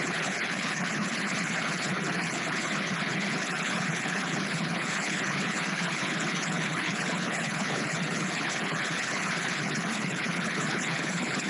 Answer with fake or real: fake